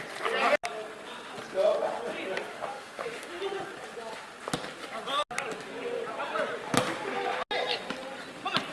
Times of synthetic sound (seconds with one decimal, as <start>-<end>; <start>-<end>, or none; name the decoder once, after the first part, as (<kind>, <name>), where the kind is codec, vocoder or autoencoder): 2.5-3.4 (autoencoder, DAC-VAE)